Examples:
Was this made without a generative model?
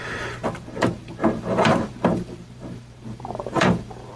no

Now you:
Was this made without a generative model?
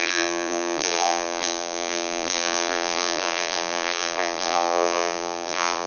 no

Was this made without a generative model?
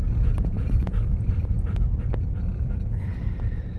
no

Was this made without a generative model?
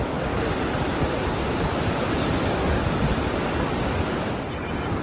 yes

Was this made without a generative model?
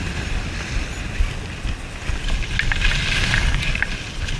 yes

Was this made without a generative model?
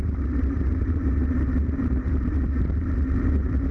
no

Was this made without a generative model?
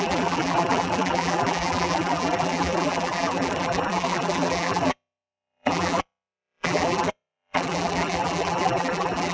no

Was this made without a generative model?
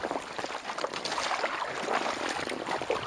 yes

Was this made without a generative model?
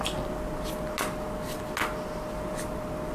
yes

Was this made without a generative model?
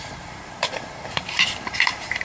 no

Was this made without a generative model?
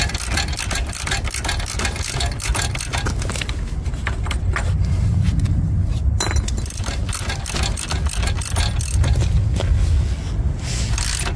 yes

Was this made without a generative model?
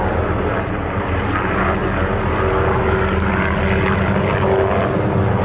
yes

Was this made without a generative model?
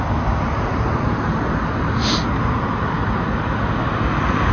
yes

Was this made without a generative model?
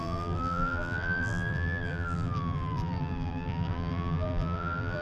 no